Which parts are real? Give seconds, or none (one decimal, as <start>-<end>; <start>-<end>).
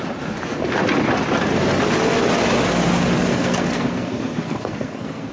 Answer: 0.0-3.3